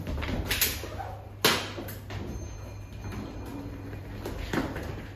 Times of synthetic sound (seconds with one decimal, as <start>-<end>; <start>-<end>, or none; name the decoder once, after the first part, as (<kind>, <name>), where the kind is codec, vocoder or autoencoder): none